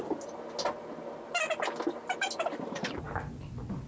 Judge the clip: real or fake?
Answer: real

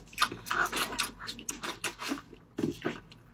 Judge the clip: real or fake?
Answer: real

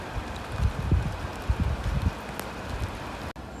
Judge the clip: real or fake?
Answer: real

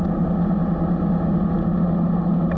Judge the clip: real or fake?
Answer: real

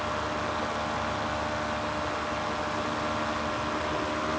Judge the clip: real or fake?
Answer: real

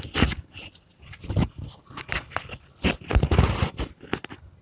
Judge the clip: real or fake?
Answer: real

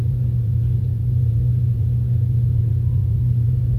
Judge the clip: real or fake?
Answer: fake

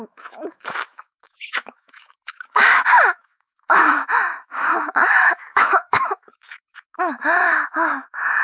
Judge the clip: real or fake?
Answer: fake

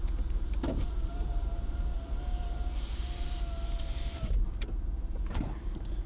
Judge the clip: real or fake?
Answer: fake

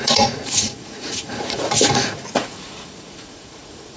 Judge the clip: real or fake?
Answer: fake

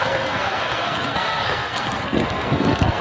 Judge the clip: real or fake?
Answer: fake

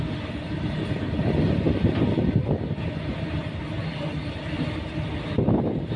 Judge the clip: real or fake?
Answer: real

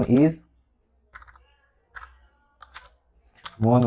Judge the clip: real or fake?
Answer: real